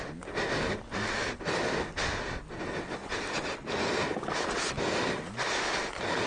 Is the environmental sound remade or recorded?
recorded